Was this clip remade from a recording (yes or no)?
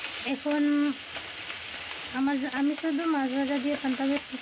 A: no